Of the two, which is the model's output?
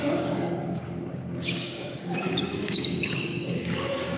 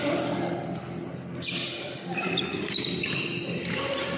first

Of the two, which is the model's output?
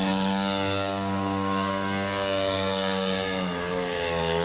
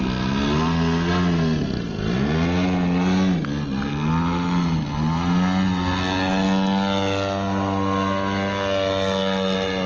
first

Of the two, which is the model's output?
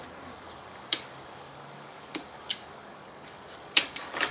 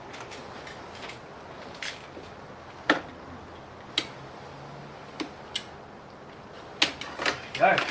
first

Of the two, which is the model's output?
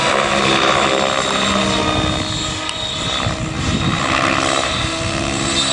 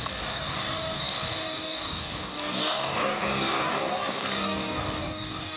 second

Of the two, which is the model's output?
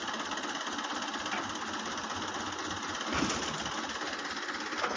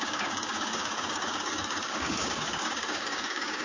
second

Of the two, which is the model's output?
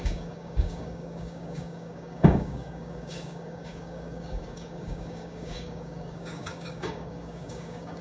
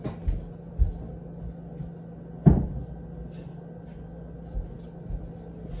first